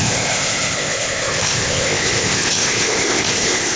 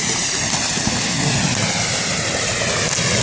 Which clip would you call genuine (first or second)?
second